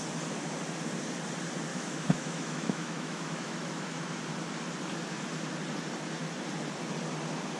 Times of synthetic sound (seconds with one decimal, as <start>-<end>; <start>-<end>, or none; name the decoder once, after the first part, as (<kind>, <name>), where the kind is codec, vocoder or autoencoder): 1.7-4.2 (autoencoder, DAC-VAE)